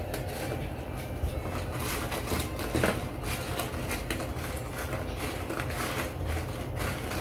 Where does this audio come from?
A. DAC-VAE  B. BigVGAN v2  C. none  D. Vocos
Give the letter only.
C